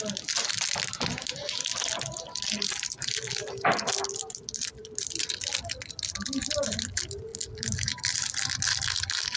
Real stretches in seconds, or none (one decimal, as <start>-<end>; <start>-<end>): 0.0-7.3; 8.8-9.4